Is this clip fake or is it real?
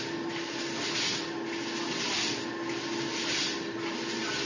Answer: real